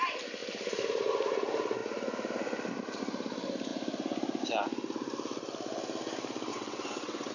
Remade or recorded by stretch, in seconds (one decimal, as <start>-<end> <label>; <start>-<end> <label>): 0.0-6.5 recorded; 6.5-7.3 remade